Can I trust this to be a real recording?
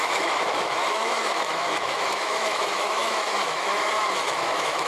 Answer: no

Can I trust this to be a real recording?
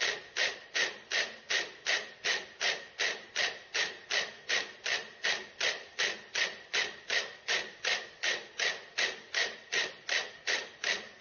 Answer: no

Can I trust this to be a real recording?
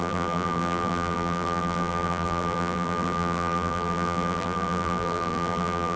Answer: no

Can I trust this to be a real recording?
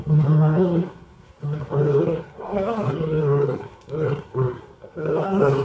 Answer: no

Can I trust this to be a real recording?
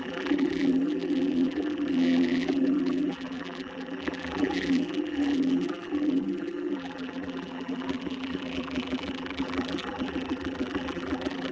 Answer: no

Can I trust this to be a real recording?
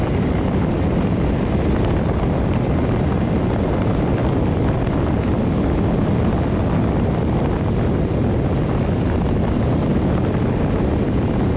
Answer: yes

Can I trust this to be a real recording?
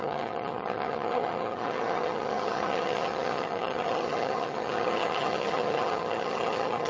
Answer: no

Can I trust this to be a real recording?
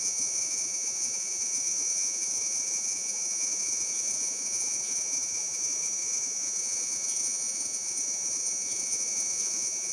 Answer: no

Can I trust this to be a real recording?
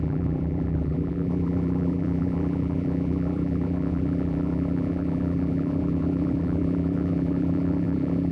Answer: no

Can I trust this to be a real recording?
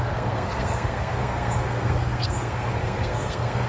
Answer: no